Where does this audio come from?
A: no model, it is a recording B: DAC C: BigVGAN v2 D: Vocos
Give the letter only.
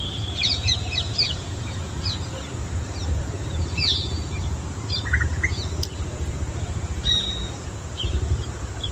D